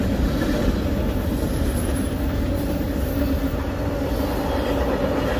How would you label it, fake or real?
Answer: real